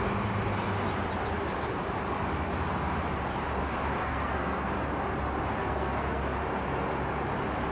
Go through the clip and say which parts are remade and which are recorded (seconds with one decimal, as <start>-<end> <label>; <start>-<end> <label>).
0.0-4.0 recorded; 4.0-4.7 remade; 4.7-5.6 recorded; 5.6-6.2 remade; 6.2-7.7 recorded